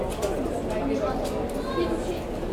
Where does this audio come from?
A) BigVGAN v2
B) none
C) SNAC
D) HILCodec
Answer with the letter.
B